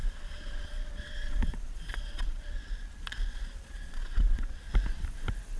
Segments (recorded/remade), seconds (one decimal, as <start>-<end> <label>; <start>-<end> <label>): 0.0-4.7 remade; 4.7-5.6 recorded